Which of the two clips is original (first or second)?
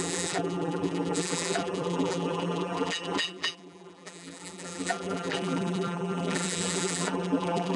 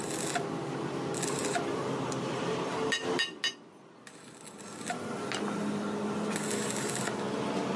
second